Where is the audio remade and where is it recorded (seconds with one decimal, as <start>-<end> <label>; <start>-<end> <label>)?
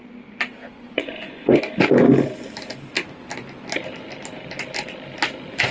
0.0-0.6 recorded; 0.6-1.6 remade; 1.6-5.7 recorded